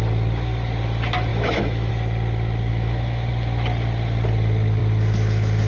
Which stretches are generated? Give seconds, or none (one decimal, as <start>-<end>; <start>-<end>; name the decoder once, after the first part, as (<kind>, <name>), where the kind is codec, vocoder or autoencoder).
1.3-1.9 (autoencoder, DAC-VAE); 2.7-3.3